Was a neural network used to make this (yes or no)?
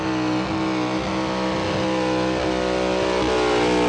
no